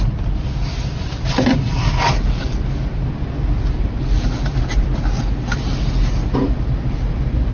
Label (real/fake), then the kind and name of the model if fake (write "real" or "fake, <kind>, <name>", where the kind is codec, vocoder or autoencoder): real